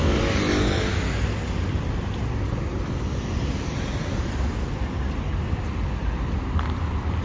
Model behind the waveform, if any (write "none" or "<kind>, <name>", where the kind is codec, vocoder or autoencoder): none